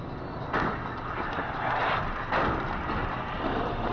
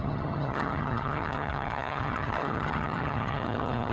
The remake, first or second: second